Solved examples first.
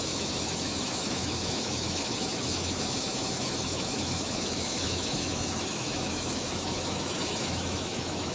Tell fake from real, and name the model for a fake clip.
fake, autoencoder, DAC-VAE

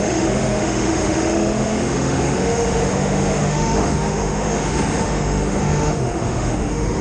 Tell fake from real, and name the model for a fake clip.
fake, autoencoder, DAC-VAE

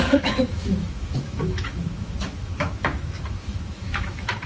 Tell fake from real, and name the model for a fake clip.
fake, autoencoder, DAC-VAE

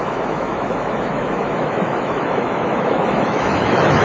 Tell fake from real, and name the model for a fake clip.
fake, autoencoder, DAC-VAE